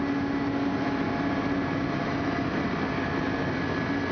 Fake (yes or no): no